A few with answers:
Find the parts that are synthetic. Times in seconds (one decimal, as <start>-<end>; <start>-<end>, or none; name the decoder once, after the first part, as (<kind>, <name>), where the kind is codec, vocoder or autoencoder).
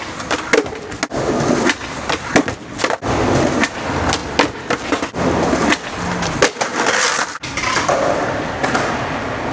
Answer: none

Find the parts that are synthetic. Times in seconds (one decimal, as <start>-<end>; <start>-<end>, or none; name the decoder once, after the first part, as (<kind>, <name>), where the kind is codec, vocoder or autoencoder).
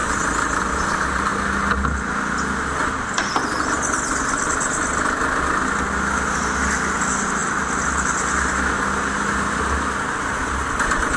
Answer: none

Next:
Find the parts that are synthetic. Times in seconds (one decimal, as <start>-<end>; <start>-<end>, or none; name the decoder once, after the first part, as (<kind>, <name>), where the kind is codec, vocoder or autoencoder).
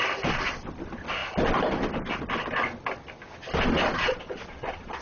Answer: 4.1-5.0 (vocoder, Vocos)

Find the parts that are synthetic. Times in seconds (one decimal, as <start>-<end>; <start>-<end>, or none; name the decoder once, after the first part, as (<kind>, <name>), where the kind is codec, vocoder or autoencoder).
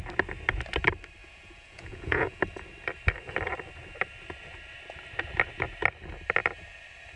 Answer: 1.2-2.4 (vocoder, Vocos)